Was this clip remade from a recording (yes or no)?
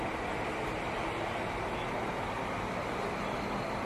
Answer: no